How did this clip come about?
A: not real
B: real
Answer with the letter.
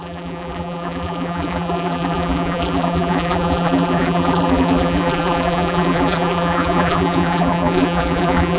A